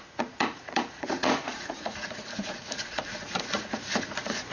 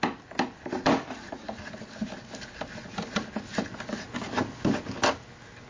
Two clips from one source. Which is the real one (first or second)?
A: second